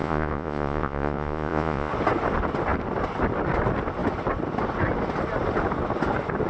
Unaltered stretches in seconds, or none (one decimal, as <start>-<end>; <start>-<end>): 1.9-6.5

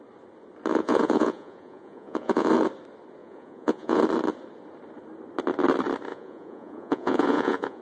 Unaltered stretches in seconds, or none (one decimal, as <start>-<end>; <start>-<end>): 0.0-0.7; 2.5-3.2; 4.0-6.1

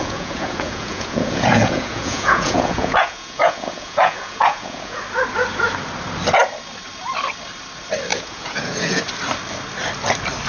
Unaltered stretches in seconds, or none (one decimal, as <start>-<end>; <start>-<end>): 5.0-8.1; 9.0-10.5

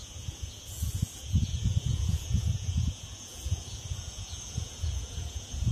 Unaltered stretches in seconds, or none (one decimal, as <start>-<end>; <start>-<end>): none

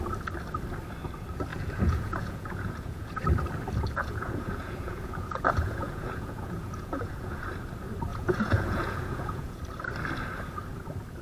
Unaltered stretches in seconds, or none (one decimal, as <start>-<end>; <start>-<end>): 0.0-1.5; 3.2-4.0; 7.4-8.1; 9.6-11.2